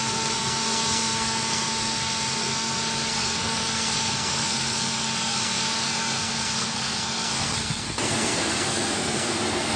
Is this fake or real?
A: fake